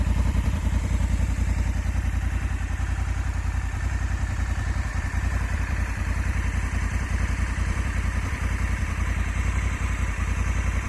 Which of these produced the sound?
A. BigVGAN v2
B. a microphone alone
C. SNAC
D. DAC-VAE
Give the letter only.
A